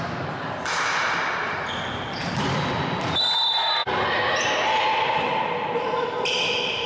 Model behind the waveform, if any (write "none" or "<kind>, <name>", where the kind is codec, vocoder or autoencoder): none